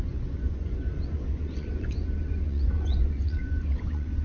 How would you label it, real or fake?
fake